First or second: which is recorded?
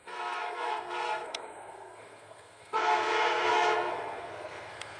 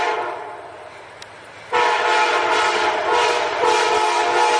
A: second